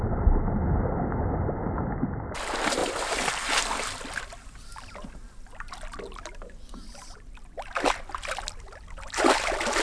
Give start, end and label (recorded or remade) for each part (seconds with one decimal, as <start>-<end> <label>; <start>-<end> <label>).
0.0-9.8 recorded